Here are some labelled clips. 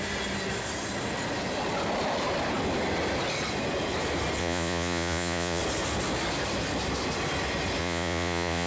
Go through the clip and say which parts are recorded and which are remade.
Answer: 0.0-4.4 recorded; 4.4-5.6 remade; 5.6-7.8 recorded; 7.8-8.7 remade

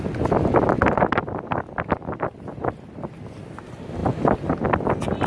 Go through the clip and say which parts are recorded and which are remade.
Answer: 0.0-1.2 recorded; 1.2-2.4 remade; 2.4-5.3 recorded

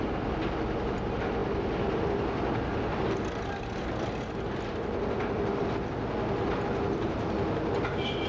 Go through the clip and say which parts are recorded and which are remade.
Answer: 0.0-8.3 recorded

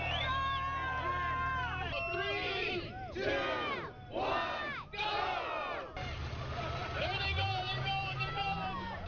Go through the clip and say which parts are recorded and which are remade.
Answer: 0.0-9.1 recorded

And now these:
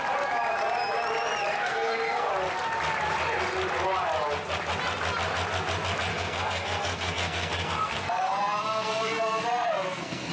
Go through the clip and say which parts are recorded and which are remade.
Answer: 0.0-1.5 recorded; 1.5-2.3 remade; 2.3-6.1 recorded; 6.1-10.3 remade